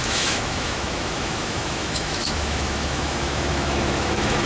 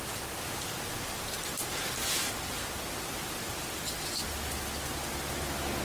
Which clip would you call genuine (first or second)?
second